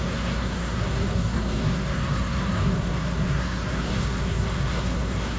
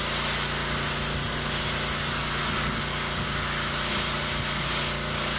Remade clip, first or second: first